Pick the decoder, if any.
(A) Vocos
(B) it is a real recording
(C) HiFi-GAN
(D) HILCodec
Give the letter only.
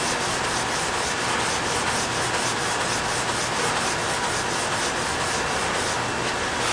B